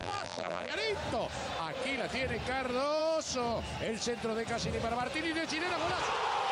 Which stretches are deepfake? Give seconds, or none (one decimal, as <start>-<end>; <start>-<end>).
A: 0.0-0.7